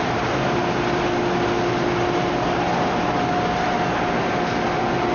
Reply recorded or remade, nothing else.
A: recorded